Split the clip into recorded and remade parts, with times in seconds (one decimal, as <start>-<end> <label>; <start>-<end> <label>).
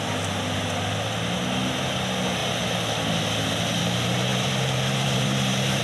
0.0-4.3 recorded; 4.3-5.8 remade